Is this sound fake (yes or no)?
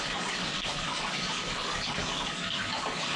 yes